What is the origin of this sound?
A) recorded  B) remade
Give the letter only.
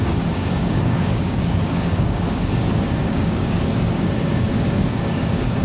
B